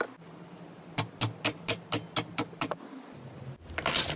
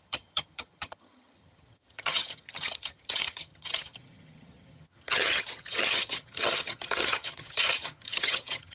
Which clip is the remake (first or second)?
second